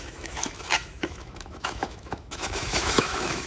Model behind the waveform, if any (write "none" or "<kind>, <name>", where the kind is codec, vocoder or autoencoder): autoencoder, DAC-VAE